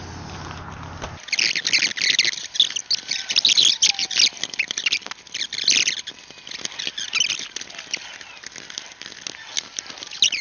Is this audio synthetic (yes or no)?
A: no